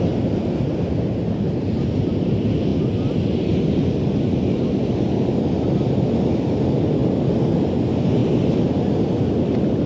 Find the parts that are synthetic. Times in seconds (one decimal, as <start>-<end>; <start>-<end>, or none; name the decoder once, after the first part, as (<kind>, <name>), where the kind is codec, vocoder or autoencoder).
none